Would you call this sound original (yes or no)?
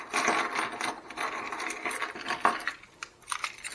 yes